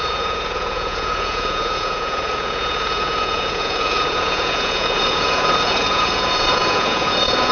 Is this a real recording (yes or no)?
no